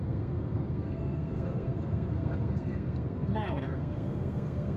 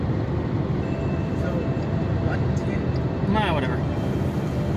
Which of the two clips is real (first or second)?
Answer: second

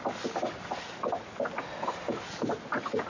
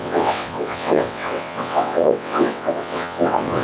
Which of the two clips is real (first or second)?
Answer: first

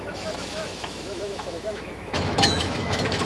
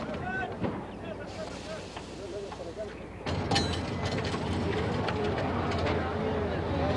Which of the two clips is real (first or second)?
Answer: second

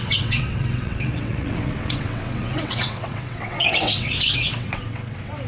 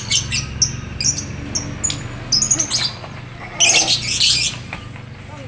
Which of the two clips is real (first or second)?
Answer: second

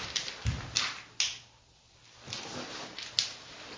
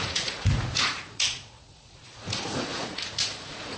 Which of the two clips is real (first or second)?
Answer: first